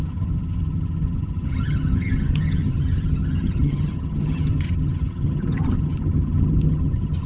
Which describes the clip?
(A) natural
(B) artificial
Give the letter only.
B